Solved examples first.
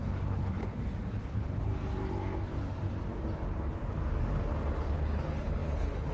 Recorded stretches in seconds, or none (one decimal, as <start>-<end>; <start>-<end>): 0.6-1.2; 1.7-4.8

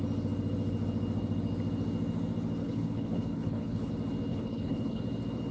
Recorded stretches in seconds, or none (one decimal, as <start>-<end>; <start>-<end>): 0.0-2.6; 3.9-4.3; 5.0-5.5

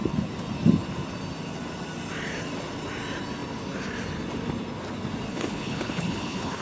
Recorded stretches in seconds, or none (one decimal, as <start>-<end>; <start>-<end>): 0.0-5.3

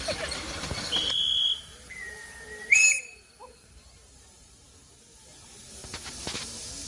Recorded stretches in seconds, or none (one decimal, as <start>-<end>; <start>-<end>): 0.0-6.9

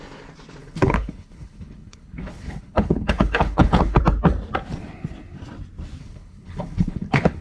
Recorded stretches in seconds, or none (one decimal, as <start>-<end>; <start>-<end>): 0.0-0.6; 4.0-6.0

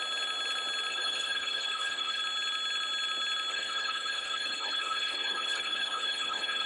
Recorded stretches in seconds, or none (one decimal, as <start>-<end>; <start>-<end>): 0.0-0.9; 2.2-3.5

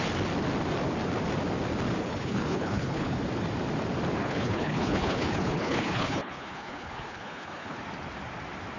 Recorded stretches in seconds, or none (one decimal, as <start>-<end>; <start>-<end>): 0.0-2.0; 3.2-4.2; 7.8-8.8

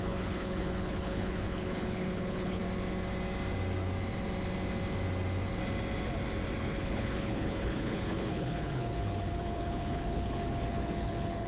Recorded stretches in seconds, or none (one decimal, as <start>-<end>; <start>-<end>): 2.6-6.6